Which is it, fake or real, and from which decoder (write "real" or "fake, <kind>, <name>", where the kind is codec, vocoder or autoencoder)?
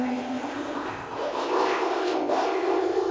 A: fake, codec, ZipCodec